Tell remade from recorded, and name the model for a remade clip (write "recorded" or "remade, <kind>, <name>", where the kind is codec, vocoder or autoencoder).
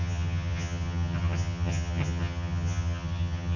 remade, vocoder, HiFi-GAN